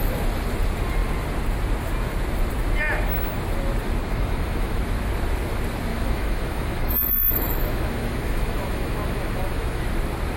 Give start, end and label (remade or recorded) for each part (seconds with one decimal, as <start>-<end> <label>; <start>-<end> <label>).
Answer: 0.0-4.0 recorded; 4.0-4.8 remade; 4.8-5.9 recorded; 5.9-9.8 remade; 9.8-10.4 recorded